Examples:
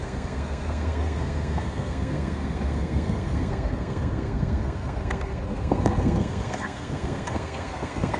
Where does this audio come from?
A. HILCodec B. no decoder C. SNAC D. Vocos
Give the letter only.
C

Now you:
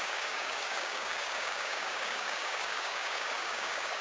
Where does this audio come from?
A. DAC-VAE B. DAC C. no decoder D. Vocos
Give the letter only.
B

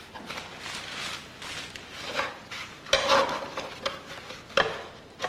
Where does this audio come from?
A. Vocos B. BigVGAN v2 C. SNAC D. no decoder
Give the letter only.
D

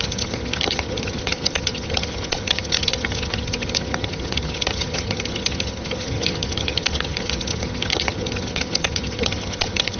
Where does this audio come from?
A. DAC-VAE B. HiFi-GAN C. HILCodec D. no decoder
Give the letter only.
B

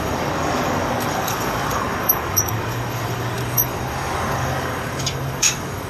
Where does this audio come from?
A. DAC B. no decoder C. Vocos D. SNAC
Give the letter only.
A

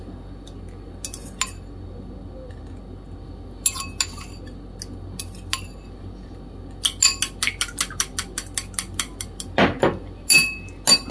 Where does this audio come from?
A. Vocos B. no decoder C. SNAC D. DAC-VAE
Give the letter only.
B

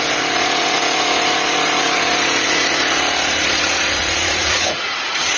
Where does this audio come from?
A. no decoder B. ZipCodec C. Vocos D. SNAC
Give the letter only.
C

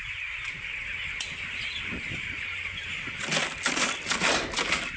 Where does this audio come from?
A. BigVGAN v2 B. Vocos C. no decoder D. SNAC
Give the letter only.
C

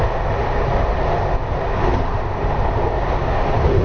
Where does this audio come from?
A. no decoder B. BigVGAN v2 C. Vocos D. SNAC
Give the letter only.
A